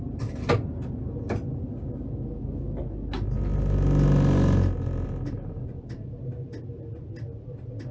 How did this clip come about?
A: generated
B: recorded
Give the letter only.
B